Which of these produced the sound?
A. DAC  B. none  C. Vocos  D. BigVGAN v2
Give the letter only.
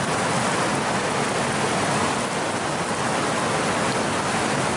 B